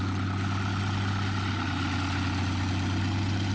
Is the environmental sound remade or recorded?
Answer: recorded